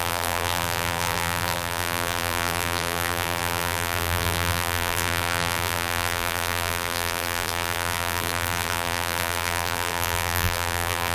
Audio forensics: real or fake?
fake